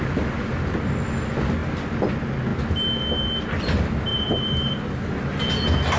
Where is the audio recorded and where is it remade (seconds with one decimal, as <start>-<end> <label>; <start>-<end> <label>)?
0.0-4.1 recorded; 4.1-4.7 remade; 4.7-6.0 recorded